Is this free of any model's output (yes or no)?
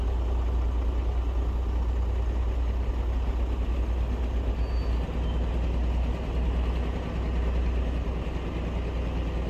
yes